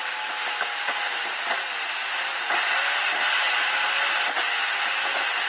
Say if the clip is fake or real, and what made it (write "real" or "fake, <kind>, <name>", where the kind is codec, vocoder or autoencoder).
real